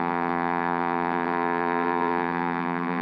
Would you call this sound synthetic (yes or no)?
yes